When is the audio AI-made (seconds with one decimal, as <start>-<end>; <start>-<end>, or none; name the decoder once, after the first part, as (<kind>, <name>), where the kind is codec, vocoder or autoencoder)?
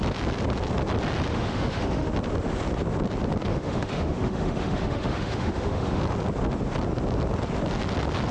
1.3-2.1 (autoencoder, DAC-VAE); 3.5-6.0